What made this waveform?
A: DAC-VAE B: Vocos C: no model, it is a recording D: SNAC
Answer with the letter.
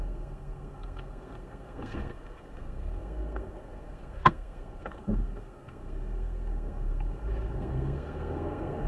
D